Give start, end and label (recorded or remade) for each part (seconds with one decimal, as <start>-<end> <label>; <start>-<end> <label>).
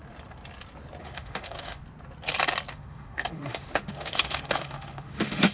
0.0-1.0 recorded; 1.0-1.8 remade; 1.8-2.7 recorded; 2.7-5.5 remade